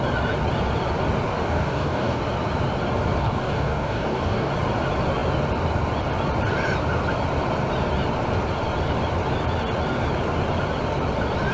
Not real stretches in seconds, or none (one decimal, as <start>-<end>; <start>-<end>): 1.4-2.2; 3.2-4.5